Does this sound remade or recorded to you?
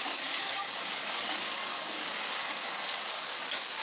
remade